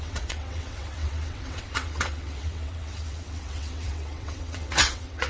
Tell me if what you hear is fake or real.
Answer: fake